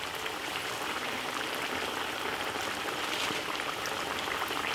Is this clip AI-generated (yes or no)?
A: no